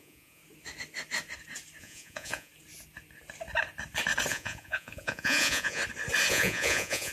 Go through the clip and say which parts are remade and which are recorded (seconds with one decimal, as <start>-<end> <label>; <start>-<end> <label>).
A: 0.0-0.4 remade; 0.4-1.8 recorded; 1.8-2.5 remade; 2.5-4.3 recorded; 4.3-5.8 remade; 5.8-6.3 recorded; 6.3-7.1 remade